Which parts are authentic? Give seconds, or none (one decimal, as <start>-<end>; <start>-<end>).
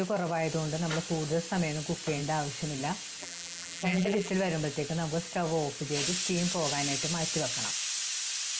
0.0-3.2; 4.3-8.6